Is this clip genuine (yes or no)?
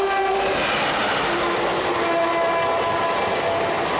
yes